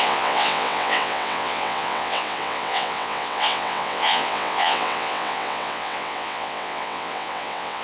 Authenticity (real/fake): fake